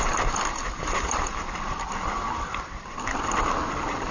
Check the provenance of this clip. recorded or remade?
recorded